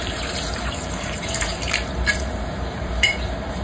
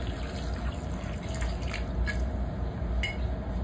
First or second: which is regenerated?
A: first